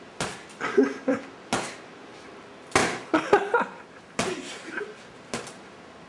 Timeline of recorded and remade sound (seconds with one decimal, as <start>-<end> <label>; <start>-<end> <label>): 0.0-2.8 recorded; 2.8-3.6 remade; 3.6-6.1 recorded